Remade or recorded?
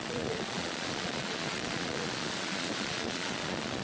remade